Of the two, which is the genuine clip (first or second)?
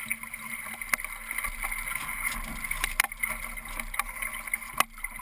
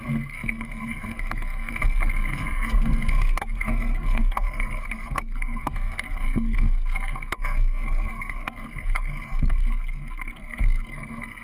first